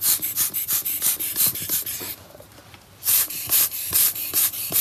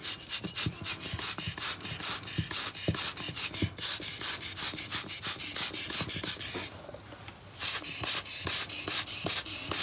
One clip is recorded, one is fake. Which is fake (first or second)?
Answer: first